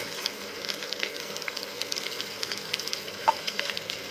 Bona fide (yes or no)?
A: no